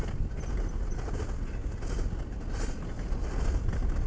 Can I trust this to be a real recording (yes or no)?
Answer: yes